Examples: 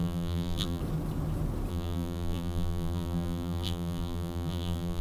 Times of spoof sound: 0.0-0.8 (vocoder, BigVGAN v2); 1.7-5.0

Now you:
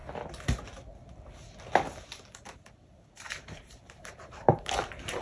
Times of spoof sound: 3.1-5.2 (vocoder, BigVGAN v2)

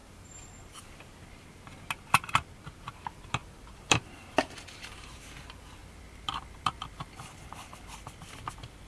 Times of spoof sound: 3.4-5.2 (vocoder, BigVGAN v2); 5.8-8.9

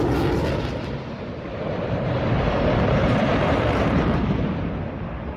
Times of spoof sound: 1.5-4.7 (vocoder, BigVGAN v2)

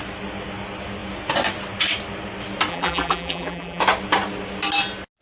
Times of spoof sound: 2.7-3.8 (vocoder, BigVGAN v2)